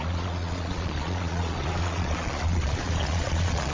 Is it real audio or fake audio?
fake